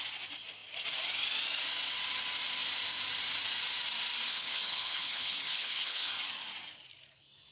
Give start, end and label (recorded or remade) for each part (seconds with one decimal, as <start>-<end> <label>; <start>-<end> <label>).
0.0-4.3 recorded; 4.3-6.1 remade; 6.1-7.5 recorded